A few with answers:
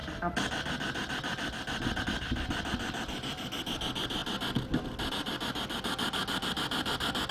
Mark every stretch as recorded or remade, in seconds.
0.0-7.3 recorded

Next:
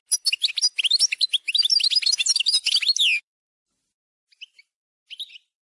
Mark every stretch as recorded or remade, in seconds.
0.0-5.6 recorded

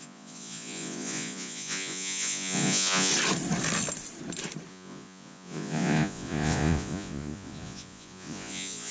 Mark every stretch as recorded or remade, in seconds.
0.0-3.1 remade; 3.1-4.7 recorded; 4.7-8.9 remade

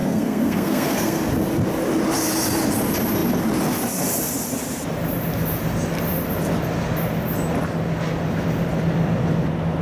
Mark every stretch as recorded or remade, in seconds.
0.0-1.2 remade; 1.2-9.8 recorded

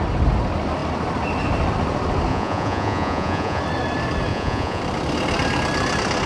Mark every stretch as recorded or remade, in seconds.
0.0-2.3 recorded; 2.3-3.6 remade; 3.6-4.3 recorded; 4.3-4.8 remade; 4.8-6.3 recorded

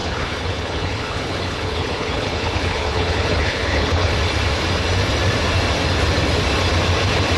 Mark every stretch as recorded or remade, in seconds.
0.0-4.1 remade; 4.1-7.4 recorded

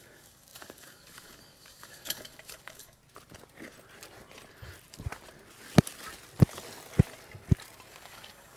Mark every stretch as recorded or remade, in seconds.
0.0-3.0 remade; 3.0-7.9 recorded; 7.9-8.6 remade

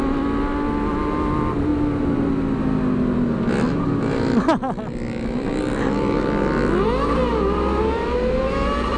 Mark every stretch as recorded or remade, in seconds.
0.0-9.0 recorded